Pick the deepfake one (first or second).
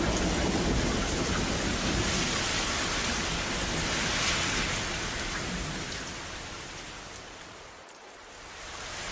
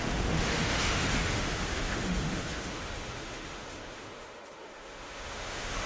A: second